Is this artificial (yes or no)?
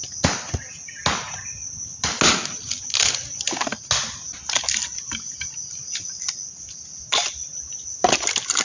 no